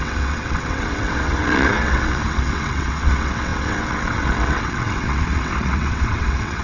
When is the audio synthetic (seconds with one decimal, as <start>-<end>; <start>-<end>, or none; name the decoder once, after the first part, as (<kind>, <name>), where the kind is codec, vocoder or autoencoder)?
0.0-6.6 (vocoder, WaveNeXt)